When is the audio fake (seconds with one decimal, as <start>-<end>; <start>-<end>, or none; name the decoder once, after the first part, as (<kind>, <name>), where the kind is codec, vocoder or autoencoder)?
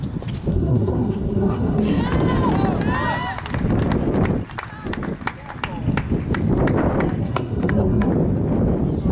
0.5-2.0 (codec, SNAC); 7.2-8.1